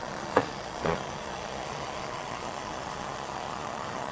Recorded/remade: remade